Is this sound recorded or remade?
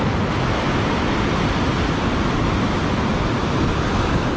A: recorded